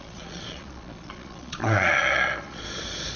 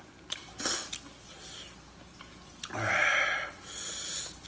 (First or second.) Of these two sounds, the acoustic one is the second